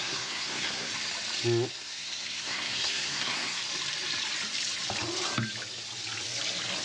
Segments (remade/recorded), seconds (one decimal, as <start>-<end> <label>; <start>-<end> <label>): 0.0-0.9 remade; 0.9-1.7 recorded; 1.7-3.6 remade; 3.6-6.8 recorded